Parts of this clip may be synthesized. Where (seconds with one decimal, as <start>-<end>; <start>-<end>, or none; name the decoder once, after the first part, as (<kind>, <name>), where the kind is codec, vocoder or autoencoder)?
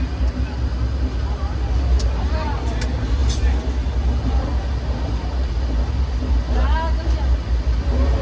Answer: none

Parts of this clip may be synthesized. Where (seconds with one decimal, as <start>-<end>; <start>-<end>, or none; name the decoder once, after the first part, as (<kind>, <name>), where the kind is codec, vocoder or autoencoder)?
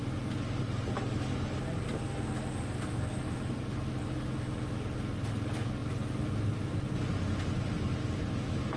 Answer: none